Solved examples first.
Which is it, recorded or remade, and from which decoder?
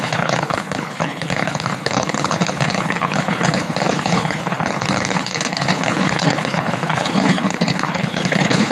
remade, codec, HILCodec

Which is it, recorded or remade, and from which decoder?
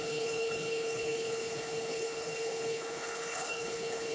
remade, codec, HILCodec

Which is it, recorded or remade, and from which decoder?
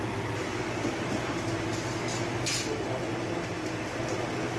recorded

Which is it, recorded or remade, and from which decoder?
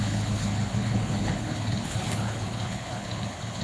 remade, codec, HILCodec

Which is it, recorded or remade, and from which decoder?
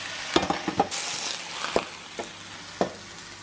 recorded